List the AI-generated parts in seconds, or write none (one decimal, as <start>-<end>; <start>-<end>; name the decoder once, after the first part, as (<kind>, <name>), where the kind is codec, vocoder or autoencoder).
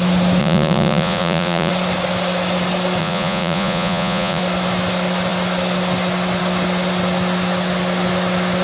0.4-1.7 (vocoder, Vocos); 3.0-4.4